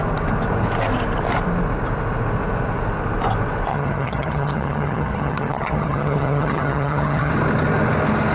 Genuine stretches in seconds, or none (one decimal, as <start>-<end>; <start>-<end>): 0.0-3.7; 7.3-8.3